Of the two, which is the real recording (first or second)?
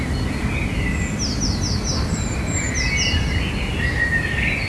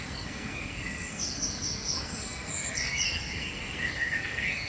first